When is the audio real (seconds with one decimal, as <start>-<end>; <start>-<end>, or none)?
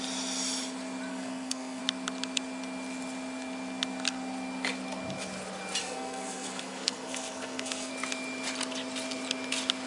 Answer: 0.0-1.1; 1.8-5.8; 7.9-9.9